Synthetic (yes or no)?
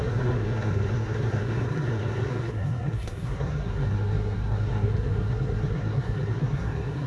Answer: yes